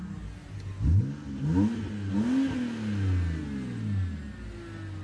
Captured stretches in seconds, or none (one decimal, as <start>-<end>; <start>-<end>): 0.0-5.0